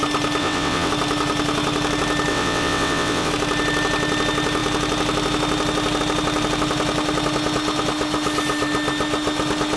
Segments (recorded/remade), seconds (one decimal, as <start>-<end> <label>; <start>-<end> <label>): 0.0-0.4 recorded; 0.4-0.9 remade; 0.9-2.3 recorded; 2.3-3.3 remade; 3.3-9.8 recorded